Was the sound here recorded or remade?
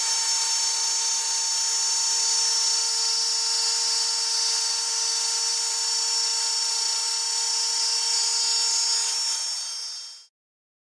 recorded